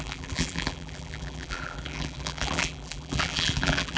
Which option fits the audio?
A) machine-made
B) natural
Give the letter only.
A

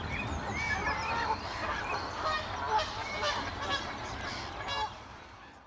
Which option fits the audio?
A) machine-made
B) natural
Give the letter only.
A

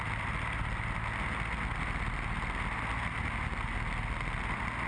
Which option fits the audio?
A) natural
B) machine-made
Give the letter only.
A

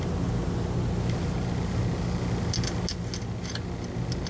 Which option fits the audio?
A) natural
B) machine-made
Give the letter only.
A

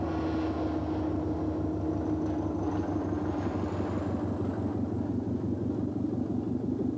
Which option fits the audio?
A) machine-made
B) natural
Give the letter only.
B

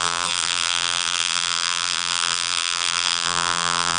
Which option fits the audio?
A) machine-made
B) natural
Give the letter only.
A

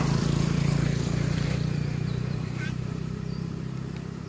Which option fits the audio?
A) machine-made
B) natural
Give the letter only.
A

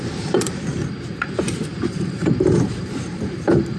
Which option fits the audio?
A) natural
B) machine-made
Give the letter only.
B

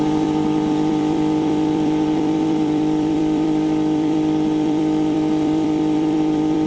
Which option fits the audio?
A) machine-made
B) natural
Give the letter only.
A